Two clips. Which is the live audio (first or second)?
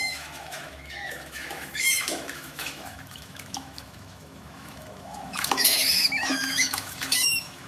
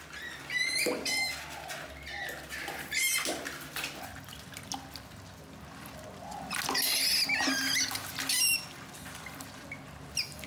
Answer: second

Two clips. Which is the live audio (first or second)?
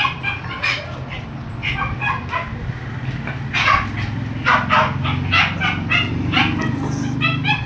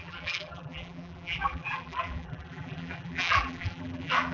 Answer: first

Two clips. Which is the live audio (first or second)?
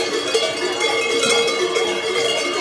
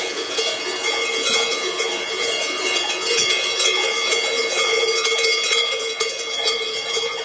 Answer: first